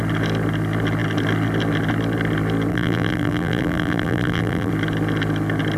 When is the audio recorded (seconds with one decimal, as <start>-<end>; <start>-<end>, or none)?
0.0-2.7; 4.7-5.8

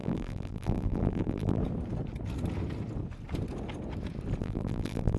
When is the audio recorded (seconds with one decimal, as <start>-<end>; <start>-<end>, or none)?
1.6-4.4

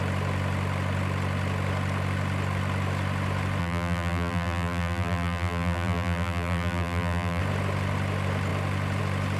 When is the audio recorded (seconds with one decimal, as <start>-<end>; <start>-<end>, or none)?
0.0-3.6; 7.4-9.4

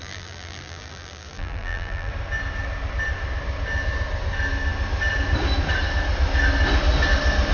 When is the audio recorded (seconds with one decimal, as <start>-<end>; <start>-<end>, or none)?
2.1-7.5

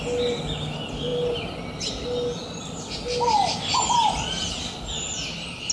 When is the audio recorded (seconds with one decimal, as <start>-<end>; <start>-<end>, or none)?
0.0-5.7